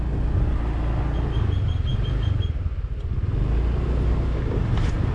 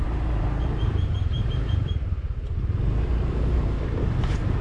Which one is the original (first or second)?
first